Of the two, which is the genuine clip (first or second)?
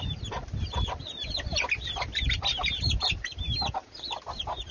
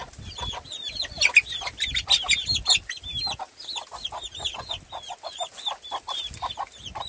second